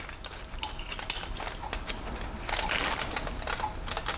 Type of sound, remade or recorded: recorded